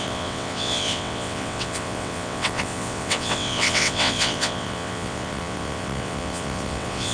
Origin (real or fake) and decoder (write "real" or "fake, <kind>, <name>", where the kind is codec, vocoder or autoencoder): fake, vocoder, WaveNeXt